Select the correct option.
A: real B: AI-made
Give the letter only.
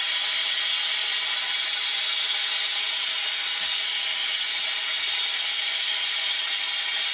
A